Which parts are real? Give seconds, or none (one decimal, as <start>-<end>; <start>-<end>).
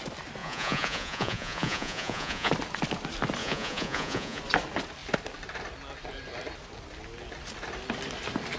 0.0-0.4; 2.5-3.4; 4.4-8.6